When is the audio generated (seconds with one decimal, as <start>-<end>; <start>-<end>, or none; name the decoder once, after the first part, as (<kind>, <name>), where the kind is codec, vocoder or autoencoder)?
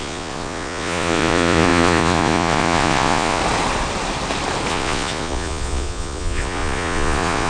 0.0-3.4 (vocoder, Vocos); 4.7-7.5